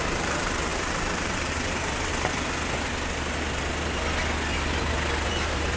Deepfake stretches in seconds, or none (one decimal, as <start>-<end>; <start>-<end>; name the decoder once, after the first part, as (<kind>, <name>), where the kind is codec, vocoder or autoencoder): 0.0-2.1 (vocoder, BigVGAN v2); 5.3-5.8